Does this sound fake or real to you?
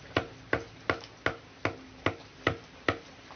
real